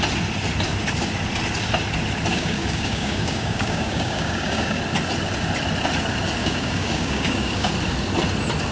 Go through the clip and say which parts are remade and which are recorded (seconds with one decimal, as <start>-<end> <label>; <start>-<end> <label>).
0.0-2.3 recorded; 2.3-4.8 remade; 4.8-6.4 recorded; 6.4-7.7 remade; 7.7-8.7 recorded